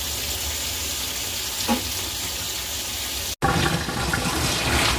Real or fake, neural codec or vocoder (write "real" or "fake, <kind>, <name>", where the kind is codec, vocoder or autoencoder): real